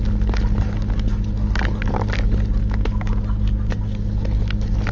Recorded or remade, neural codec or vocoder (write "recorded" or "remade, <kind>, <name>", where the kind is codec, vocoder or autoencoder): recorded